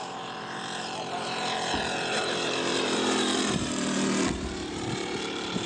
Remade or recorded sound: remade